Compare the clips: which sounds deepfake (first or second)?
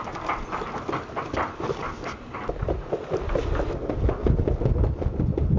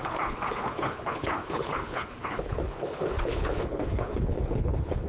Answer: second